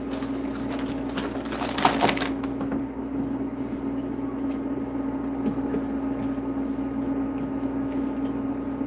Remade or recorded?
recorded